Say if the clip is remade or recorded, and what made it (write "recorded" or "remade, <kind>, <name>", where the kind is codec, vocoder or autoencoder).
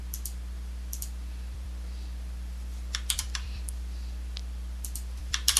remade, vocoder, BigVGAN v2